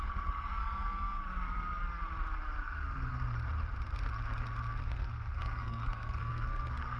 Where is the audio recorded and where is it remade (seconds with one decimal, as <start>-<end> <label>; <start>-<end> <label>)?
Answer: 0.0-1.8 remade; 1.8-2.6 recorded; 2.6-3.1 remade; 3.1-4.9 recorded; 4.9-7.0 remade